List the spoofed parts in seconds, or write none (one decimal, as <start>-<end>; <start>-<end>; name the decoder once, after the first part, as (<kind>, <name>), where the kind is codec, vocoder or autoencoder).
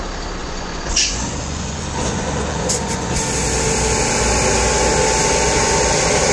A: 0.4-3.1 (vocoder, Vocos)